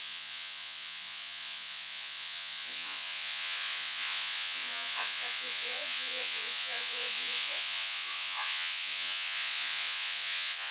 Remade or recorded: remade